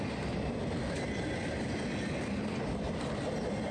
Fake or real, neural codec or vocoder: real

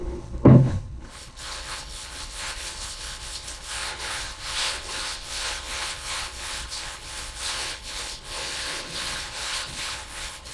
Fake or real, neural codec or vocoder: fake, codec, HILCodec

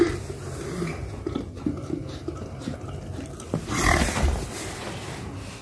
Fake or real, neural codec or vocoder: real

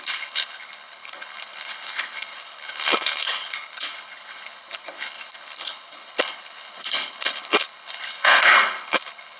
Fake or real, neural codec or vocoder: fake, codec, HILCodec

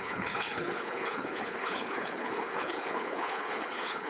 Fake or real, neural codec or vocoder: fake, codec, HILCodec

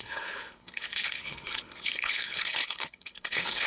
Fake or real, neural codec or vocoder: fake, codec, HILCodec